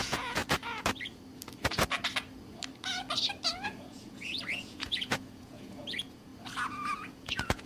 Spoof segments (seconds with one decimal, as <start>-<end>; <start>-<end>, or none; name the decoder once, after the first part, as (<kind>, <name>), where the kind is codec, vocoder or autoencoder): 0.0-0.4 (vocoder, Vocos); 3.5-6.3; 6.9-7.7